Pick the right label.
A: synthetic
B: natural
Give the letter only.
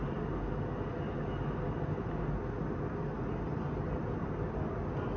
B